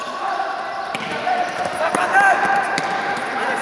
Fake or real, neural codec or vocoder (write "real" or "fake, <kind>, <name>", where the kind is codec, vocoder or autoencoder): real